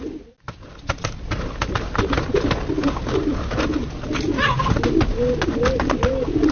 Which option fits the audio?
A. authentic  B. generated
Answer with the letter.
A